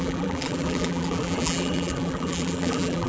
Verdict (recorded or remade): remade